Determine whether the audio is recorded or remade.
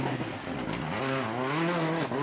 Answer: recorded